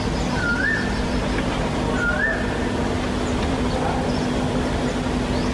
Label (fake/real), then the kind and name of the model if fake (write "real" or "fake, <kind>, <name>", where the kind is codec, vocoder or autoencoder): real